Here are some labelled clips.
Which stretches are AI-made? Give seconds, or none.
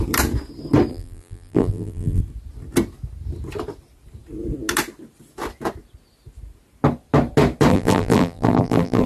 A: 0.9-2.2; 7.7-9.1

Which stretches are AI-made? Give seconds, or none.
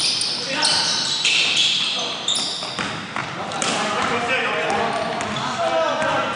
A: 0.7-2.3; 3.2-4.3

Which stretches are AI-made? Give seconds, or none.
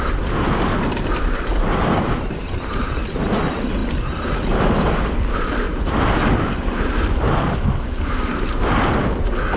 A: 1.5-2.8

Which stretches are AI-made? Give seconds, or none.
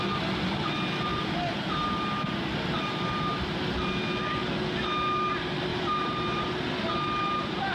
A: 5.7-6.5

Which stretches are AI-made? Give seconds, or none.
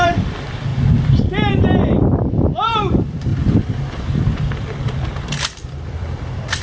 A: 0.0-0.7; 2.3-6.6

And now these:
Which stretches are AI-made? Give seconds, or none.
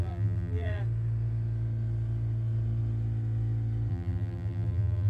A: 0.0-0.8; 3.9-5.1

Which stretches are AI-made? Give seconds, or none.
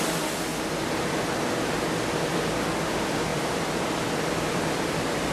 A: 3.3-5.3